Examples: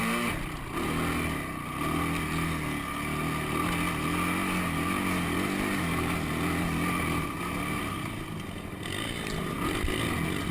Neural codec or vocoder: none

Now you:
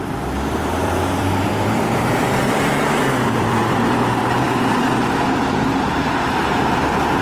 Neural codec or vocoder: vocoder, BigVGAN v2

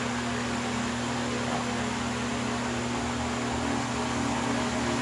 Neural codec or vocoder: none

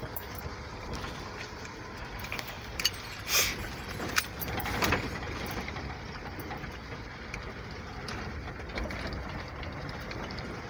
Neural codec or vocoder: vocoder, BigVGAN v2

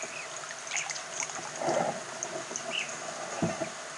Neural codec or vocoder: none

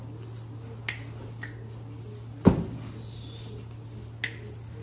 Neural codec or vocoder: none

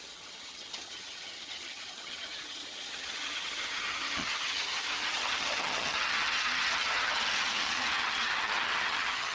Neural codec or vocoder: vocoder, HiFi-GAN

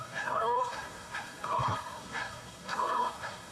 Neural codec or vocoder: codec, SNAC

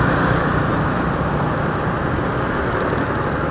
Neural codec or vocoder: none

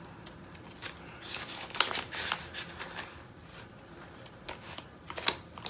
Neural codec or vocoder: none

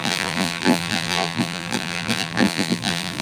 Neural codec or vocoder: vocoder, BigVGAN v2